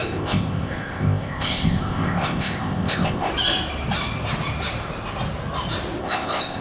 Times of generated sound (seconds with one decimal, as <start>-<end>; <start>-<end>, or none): 0.0-3.3; 6.0-6.6